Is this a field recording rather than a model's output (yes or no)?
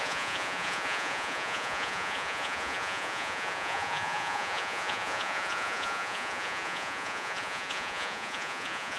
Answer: no